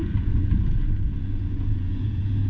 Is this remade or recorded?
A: remade